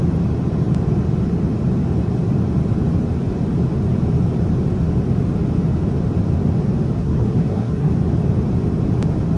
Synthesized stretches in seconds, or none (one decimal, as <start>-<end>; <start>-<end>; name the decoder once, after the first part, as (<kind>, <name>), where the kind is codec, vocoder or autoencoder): 7.0-7.9 (codec, SNAC)

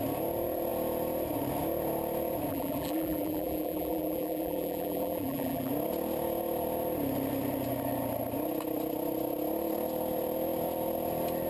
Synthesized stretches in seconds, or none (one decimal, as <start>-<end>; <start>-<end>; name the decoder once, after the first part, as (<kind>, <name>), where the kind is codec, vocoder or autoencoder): 2.5-5.7 (vocoder, BigVGAN v2)

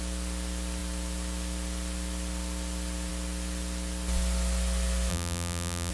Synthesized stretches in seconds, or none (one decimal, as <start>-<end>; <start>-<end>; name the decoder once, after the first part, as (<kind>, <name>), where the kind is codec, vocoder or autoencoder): 5.1-5.9 (vocoder, BigVGAN v2)

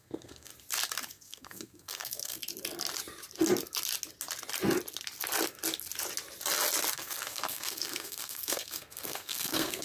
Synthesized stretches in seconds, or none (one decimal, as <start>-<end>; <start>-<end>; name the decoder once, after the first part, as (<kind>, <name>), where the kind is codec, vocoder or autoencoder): 0.0-0.5 (codec, SNAC); 1.1-2.4; 6.9-9.8

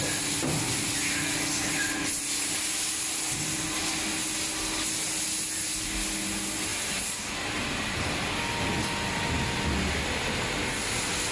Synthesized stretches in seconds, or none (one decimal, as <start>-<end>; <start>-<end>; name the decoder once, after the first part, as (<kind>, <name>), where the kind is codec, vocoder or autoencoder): none

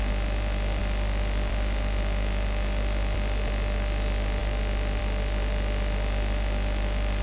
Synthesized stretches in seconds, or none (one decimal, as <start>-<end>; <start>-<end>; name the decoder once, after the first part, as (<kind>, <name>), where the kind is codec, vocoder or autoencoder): none